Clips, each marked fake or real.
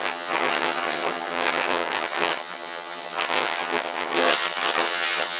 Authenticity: fake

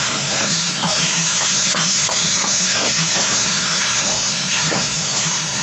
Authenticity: fake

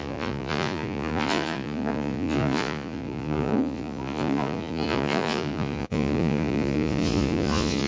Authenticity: fake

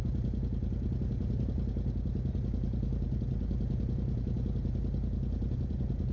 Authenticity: real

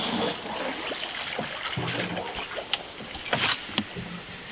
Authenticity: real